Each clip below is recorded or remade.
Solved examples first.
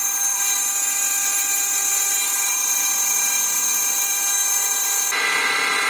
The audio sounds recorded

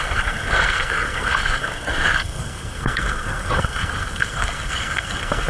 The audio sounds remade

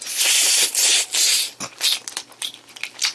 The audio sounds recorded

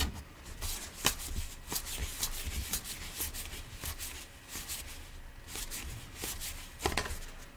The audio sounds recorded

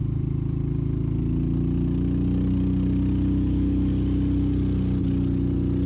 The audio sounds recorded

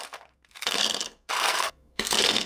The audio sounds remade